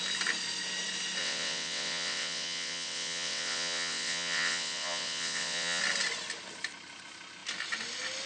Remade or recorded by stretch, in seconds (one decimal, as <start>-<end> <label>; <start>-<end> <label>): 0.0-1.2 recorded; 1.2-5.8 remade; 5.8-8.3 recorded